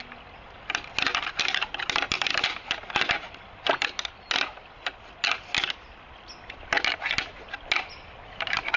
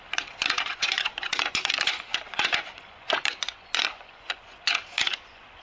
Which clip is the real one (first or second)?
first